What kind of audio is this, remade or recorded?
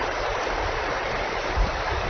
remade